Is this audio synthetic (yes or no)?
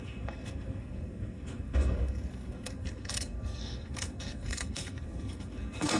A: yes